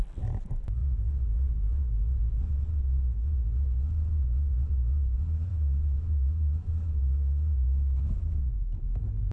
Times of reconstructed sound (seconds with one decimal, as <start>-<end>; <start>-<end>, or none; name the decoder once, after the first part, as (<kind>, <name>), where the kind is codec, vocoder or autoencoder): 5.5-9.3 (autoencoder, DAC-VAE)